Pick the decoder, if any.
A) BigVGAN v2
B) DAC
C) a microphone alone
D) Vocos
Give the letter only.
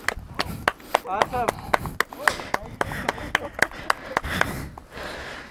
C